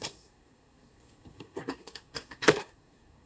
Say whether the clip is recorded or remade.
remade